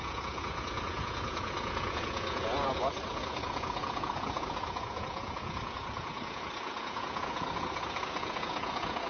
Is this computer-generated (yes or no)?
yes